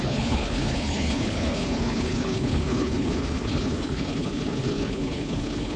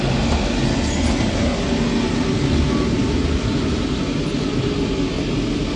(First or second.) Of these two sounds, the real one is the second